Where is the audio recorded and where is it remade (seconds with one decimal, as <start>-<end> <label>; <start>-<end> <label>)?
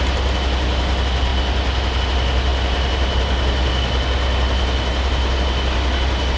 0.0-6.4 recorded